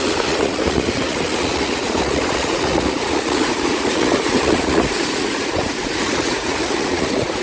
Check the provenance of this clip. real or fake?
fake